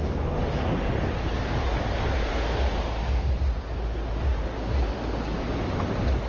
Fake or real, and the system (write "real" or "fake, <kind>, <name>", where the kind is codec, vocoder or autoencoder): real